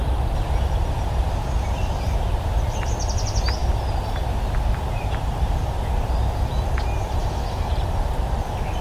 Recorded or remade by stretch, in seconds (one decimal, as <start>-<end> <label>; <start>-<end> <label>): 0.0-7.2 recorded; 7.2-7.7 remade; 7.7-8.8 recorded